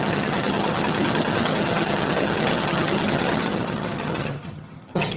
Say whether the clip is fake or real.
fake